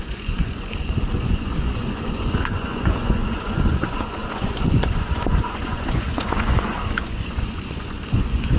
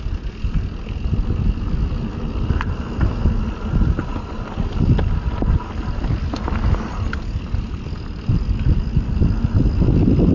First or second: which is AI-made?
first